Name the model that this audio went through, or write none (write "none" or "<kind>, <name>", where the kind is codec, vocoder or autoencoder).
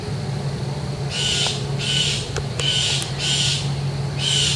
none